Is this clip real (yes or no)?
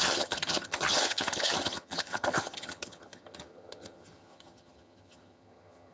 no